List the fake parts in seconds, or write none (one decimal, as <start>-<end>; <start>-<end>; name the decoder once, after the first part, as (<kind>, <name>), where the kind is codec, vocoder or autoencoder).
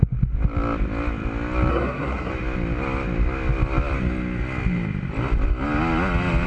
1.7-2.3 (codec, SNAC)